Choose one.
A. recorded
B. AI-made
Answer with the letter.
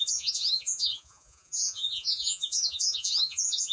B